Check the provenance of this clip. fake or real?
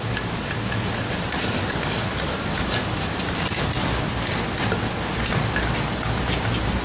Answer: real